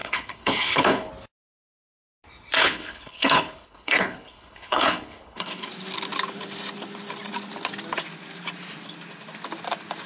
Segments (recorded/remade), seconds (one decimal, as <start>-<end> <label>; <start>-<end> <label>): 0.0-1.1 remade; 1.1-2.6 recorded; 2.6-5.7 remade; 5.7-10.1 recorded